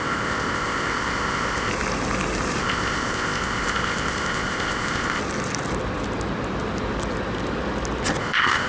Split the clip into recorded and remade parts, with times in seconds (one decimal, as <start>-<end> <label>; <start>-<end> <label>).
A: 0.0-1.7 remade; 1.7-2.6 recorded; 2.6-5.2 remade; 5.2-8.2 recorded; 8.2-8.7 remade